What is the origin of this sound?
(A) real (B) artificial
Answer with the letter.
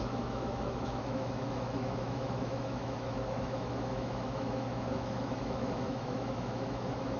B